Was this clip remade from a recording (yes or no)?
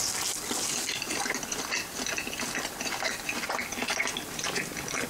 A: no